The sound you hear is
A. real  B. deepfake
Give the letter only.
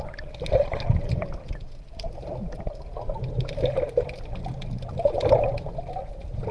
A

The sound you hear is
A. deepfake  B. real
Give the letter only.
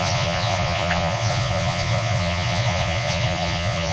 A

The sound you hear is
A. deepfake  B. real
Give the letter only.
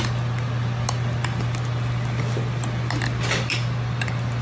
B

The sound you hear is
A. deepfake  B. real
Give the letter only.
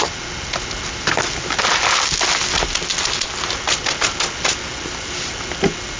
B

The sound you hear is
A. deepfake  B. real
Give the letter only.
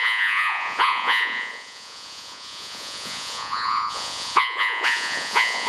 A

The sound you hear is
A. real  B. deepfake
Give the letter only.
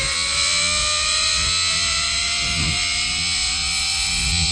B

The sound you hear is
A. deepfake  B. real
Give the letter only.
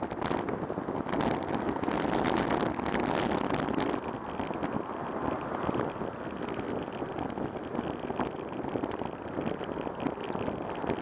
B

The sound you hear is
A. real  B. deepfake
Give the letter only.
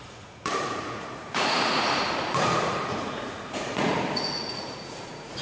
B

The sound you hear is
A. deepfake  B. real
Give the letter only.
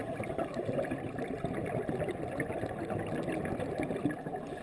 B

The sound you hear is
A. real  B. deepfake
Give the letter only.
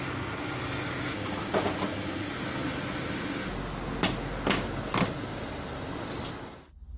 A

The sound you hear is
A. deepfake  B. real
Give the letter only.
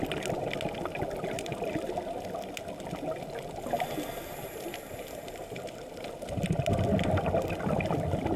B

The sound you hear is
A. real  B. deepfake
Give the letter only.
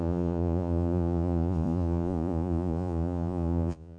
B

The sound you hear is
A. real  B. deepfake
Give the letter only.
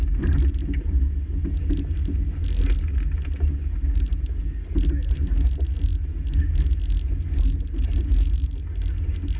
A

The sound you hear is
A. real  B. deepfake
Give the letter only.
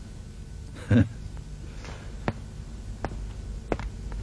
A